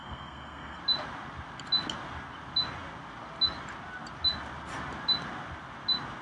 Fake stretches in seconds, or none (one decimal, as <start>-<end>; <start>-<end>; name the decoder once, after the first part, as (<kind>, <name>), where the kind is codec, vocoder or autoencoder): 0.0-0.8 (codec, SNAC)